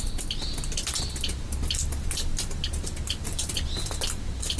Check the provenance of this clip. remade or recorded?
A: recorded